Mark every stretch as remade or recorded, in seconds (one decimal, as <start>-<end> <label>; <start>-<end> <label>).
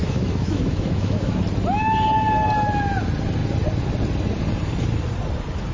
0.0-1.4 remade; 1.4-5.7 recorded